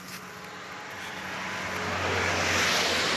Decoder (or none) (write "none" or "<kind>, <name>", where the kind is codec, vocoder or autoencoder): none